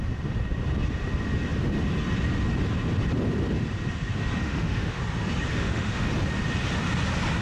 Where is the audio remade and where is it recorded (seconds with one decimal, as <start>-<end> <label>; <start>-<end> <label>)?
0.0-4.4 recorded; 4.4-5.0 remade; 5.0-5.5 recorded; 5.5-6.1 remade; 6.1-7.4 recorded